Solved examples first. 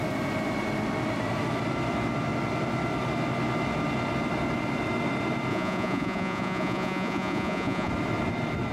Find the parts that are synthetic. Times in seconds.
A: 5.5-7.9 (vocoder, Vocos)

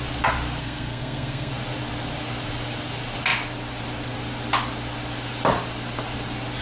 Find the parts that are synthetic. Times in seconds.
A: 0.6-1.5 (codec, SNAC)

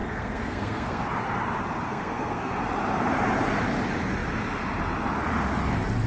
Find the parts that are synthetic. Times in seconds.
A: 0.0-1.0 (codec, SNAC); 1.9-2.5

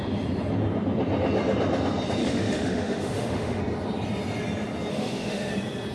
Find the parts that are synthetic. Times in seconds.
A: 2.2-3.6 (autoencoder, DAC-VAE); 4.9-5.5

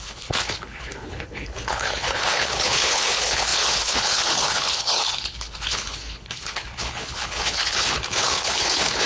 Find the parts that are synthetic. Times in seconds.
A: 0.0-9.1 (codec, HILCodec)